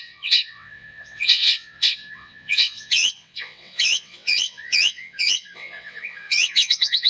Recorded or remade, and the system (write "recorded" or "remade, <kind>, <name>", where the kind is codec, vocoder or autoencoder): remade, vocoder, WaveNeXt